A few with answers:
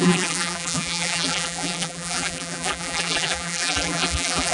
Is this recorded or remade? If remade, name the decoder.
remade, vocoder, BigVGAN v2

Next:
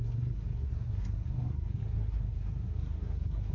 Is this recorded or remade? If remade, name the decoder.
remade, codec, SNAC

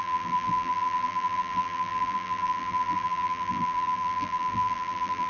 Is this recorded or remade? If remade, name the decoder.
remade, vocoder, BigVGAN v2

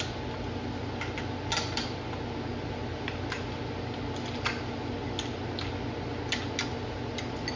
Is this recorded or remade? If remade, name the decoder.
recorded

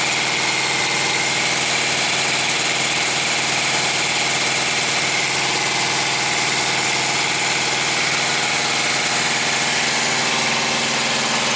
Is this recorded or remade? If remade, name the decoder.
recorded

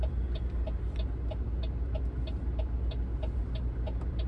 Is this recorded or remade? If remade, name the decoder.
recorded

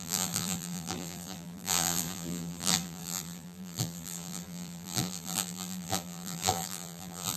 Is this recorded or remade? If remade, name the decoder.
remade, vocoder, BigVGAN v2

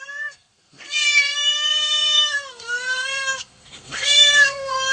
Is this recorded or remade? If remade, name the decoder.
remade, codec, SNAC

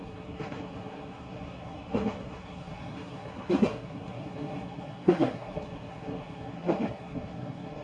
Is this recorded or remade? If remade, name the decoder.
remade, codec, SNAC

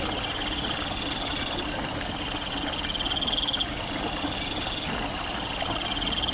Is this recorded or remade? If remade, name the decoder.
recorded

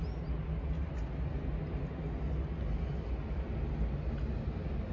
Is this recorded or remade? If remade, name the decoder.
recorded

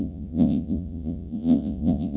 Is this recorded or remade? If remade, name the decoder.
remade, vocoder, Vocos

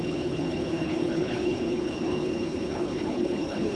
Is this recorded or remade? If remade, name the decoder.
remade, codec, HILCodec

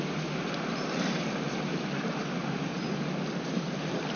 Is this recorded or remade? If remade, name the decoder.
recorded